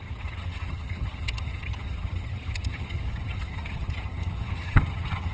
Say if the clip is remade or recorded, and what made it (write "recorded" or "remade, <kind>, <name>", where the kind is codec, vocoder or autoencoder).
remade, vocoder, HiFi-GAN